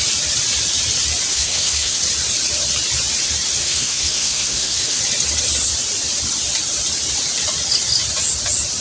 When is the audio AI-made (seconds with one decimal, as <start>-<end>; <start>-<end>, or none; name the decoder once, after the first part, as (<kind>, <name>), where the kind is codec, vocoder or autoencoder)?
1.3-2.0 (codec, SNAC); 3.6-5.0